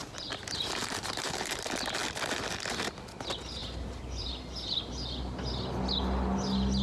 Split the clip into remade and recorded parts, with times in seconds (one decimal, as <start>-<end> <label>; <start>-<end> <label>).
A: 0.0-0.8 recorded; 0.8-1.4 remade; 1.4-3.6 recorded; 3.6-4.3 remade; 4.3-6.8 recorded